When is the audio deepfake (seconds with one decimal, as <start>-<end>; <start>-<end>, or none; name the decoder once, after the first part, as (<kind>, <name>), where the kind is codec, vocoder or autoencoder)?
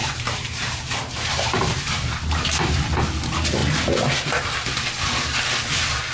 0.0-2.8 (vocoder, BigVGAN v2)